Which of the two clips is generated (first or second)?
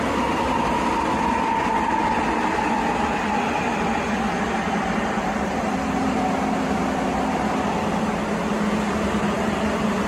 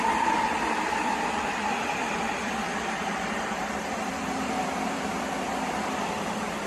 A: second